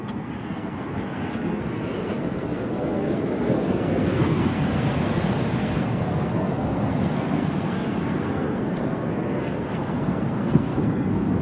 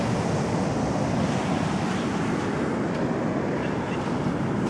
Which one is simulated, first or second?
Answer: first